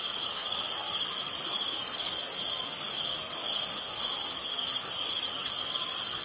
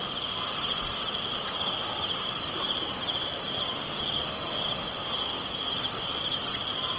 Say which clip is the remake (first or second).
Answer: first